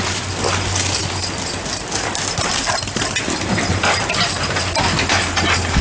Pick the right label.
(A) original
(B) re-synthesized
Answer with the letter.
A